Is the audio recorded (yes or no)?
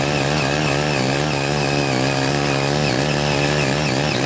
yes